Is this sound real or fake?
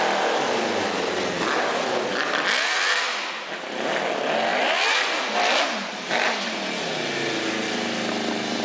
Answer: real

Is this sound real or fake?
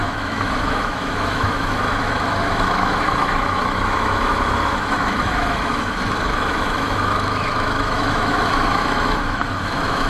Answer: fake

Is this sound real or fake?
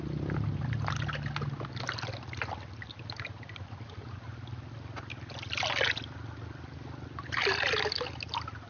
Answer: real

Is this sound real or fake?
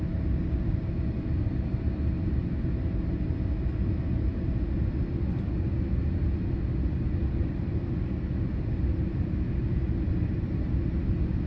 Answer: real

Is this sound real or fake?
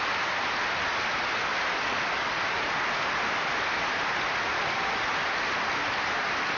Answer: real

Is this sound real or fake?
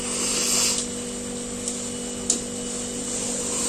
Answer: real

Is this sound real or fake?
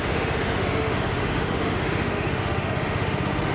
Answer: fake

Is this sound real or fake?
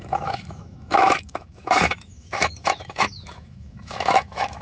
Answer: fake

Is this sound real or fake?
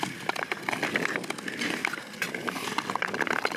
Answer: real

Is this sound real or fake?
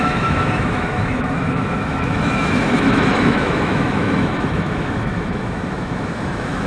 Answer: fake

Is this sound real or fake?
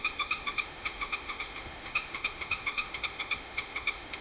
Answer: fake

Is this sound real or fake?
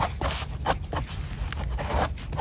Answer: real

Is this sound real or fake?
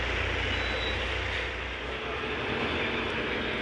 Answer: real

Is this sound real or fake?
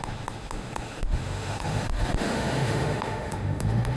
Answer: fake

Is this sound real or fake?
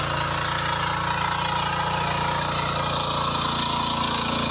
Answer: real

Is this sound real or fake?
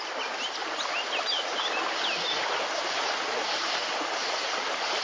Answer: real